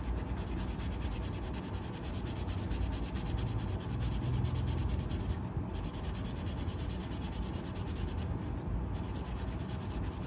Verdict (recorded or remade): recorded